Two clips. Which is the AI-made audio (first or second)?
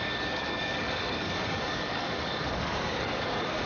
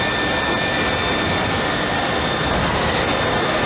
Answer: first